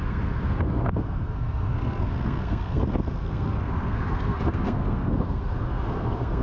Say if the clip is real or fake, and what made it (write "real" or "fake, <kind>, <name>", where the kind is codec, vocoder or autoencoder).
fake, codec, SNAC